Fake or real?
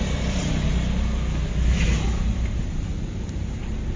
real